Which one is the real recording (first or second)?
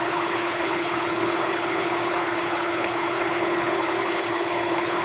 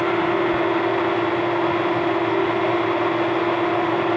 second